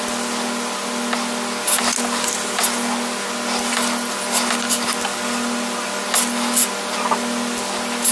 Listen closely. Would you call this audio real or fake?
real